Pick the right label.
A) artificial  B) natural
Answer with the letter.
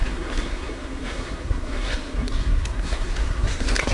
A